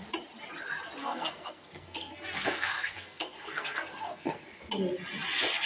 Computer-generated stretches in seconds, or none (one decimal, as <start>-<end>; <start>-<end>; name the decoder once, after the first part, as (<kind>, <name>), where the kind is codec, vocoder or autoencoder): 1.0-4.4 (codec, SNAC)